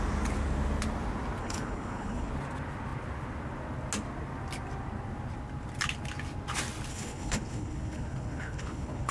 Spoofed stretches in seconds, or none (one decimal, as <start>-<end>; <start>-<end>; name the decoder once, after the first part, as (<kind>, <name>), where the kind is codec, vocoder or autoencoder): 1.4-2.3 (codec, HILCodec); 6.9-9.1